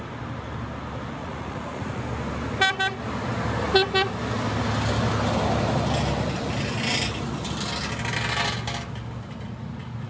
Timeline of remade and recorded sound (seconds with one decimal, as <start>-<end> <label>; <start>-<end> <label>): 0.0-1.2 recorded; 1.2-2.0 remade; 2.0-10.1 recorded